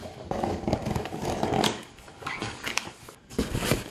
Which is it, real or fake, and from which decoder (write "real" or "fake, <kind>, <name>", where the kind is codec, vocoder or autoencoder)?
fake, codec, DAC